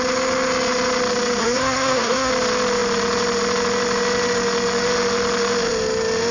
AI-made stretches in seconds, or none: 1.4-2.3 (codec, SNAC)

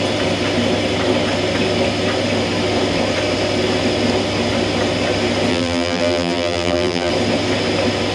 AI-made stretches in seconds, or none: 5.5-7.1 (vocoder, BigVGAN v2)

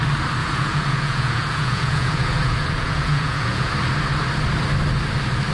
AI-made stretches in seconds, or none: 0.4-3.7 (vocoder, Vocos)

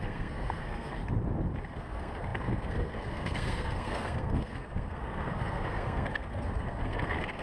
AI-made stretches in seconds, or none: 0.0-1.0 (codec, SNAC); 1.6-7.4

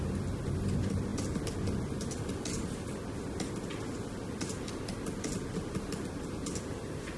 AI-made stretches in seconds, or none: none